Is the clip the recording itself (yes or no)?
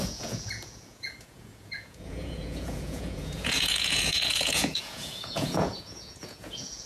no